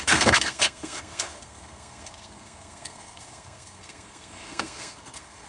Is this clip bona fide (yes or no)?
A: no